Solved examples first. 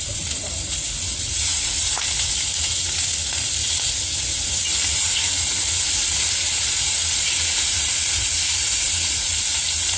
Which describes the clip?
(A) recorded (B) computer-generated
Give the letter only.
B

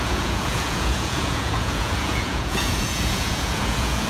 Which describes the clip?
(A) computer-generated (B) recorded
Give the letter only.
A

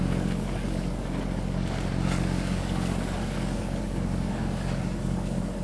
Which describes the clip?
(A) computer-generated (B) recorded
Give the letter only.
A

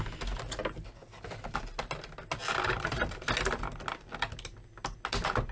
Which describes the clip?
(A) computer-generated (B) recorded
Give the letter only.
B